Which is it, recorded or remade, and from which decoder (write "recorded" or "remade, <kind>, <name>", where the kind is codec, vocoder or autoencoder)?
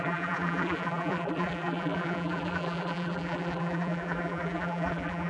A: remade, vocoder, BigVGAN v2